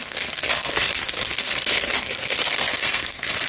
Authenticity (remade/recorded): remade